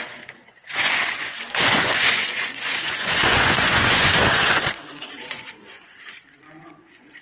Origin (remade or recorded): remade